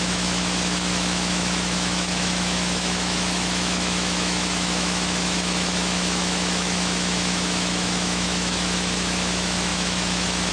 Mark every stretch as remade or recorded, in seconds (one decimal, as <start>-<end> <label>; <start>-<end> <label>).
0.0-10.5 remade